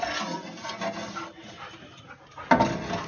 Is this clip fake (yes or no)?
no